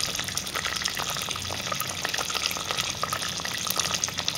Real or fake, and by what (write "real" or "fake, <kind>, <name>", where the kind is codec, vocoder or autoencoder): real